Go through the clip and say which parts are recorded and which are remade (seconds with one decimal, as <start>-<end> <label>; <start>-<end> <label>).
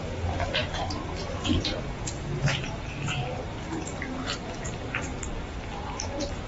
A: 0.0-1.7 recorded; 1.7-2.6 remade; 2.6-6.5 recorded